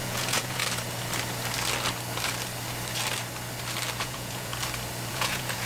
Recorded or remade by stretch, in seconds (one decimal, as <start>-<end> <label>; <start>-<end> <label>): 0.0-0.6 remade; 0.6-4.0 recorded; 4.0-4.5 remade; 4.5-5.1 recorded; 5.1-5.7 remade